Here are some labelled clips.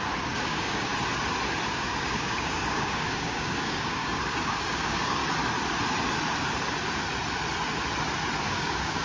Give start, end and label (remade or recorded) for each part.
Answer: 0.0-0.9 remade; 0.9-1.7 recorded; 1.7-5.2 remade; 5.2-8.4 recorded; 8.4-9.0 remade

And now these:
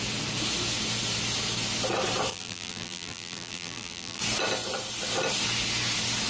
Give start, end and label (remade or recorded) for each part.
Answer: 0.0-2.3 recorded; 2.3-4.2 remade; 4.2-6.3 recorded

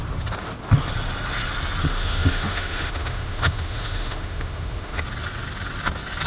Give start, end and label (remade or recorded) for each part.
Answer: 0.0-1.8 recorded; 1.8-5.0 remade; 5.0-6.3 recorded

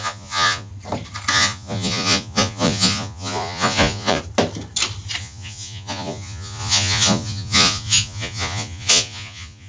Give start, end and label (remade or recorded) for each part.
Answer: 0.0-0.7 remade; 0.7-1.3 recorded; 1.3-4.2 remade; 4.2-5.2 recorded; 5.2-9.7 remade